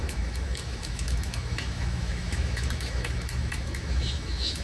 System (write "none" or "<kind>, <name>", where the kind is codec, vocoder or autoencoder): autoencoder, DAC-VAE